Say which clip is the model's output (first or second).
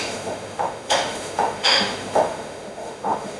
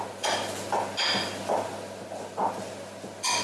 first